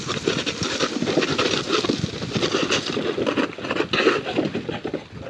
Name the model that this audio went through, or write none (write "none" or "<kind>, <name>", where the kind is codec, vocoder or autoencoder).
none